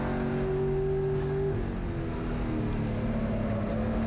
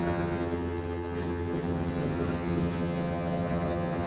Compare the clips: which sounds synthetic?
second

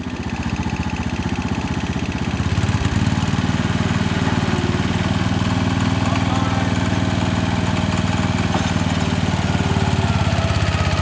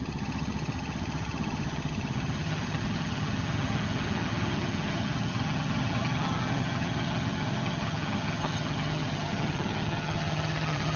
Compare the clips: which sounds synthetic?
second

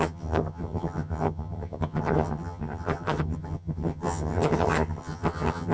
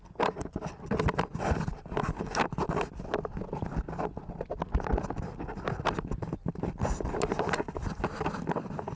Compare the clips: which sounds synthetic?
first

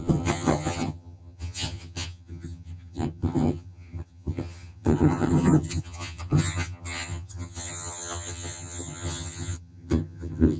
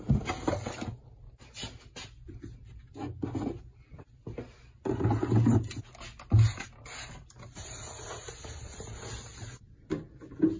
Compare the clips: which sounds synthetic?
first